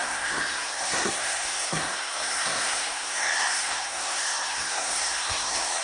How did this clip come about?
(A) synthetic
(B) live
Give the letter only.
A